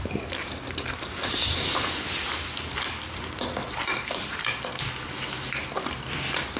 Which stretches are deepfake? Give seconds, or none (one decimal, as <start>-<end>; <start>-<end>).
3.6-4.6